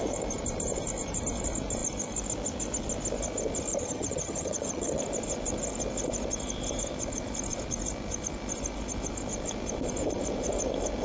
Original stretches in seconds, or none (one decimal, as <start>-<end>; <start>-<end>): 0.0-3.7; 5.0-11.0